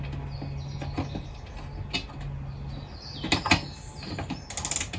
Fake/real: real